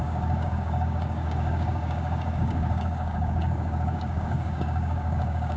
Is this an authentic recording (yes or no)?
no